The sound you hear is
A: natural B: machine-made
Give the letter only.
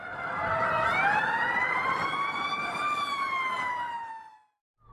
A